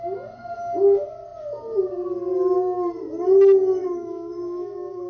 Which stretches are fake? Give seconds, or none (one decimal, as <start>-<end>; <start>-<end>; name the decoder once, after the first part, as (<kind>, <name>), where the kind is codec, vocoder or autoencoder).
3.8-5.1 (autoencoder, DAC-VAE)